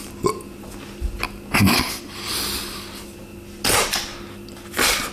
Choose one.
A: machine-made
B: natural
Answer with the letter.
B